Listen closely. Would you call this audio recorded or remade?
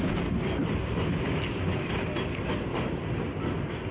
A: recorded